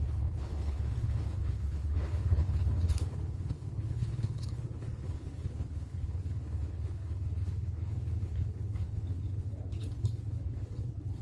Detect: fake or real fake